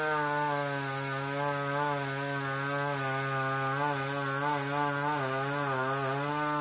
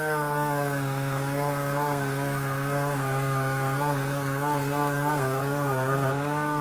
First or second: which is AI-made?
second